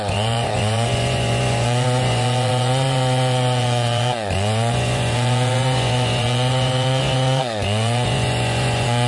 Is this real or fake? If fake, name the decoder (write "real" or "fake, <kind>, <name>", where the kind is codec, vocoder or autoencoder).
fake, vocoder, Vocos